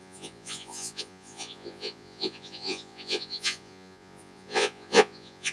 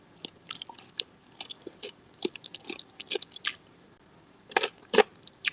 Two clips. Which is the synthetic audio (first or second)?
first